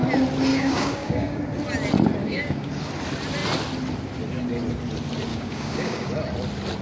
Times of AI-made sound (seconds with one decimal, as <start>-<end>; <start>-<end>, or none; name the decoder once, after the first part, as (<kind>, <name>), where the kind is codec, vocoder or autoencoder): 0.5-1.4 (codec, DAC); 2.2-2.7; 5.3-6.1